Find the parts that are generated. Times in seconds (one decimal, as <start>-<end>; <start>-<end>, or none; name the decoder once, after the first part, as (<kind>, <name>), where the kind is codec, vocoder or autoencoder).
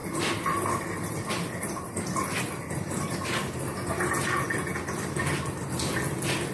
0.0-3.9 (vocoder, BigVGAN v2)